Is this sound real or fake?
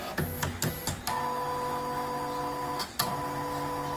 real